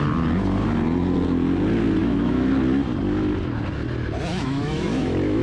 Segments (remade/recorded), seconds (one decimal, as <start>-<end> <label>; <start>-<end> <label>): 0.0-2.0 recorded; 2.0-2.5 remade; 2.5-4.3 recorded; 4.3-5.4 remade